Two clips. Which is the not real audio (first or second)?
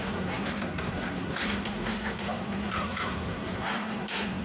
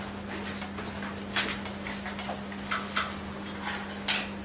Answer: first